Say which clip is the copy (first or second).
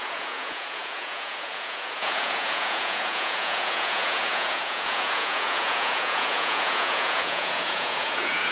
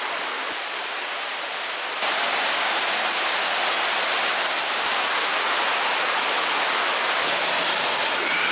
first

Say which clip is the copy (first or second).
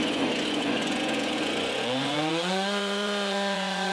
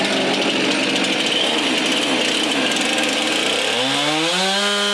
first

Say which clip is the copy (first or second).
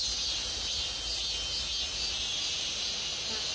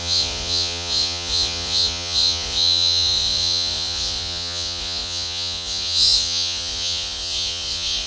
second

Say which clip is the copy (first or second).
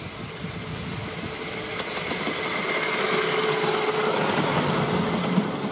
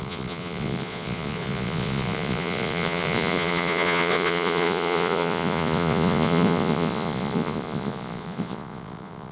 second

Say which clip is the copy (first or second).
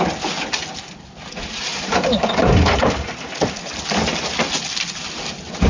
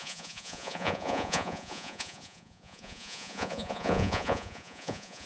second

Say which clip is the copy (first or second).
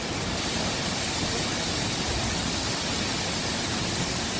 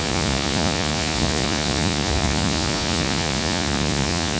second